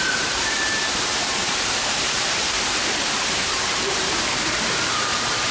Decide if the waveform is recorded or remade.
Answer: remade